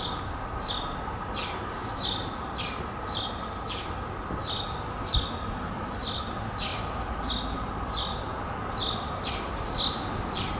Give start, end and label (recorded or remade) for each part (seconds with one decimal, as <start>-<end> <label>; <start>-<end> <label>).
0.0-6.7 recorded; 6.7-7.3 remade; 7.3-10.6 recorded